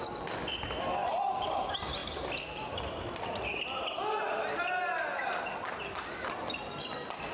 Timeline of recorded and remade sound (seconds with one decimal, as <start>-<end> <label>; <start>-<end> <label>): 0.0-1.0 recorded; 1.0-1.5 remade; 1.5-7.3 recorded